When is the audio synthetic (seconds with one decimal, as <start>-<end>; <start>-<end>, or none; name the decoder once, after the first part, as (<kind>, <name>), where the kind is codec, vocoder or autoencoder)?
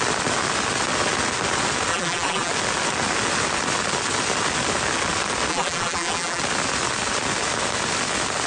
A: 1.9-2.5 (vocoder, BigVGAN v2); 5.5-6.4